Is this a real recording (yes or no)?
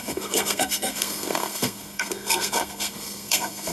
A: no